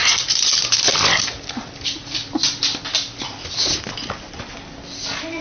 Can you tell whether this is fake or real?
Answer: real